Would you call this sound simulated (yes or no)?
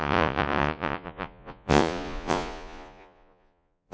yes